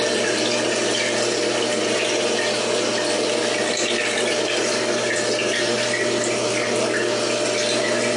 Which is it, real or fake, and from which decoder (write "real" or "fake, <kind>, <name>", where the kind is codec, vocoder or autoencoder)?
real